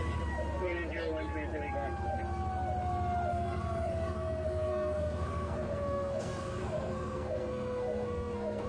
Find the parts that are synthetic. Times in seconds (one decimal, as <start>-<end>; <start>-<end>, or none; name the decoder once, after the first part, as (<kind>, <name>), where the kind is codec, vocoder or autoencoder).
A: 3.3-8.7 (codec, SNAC)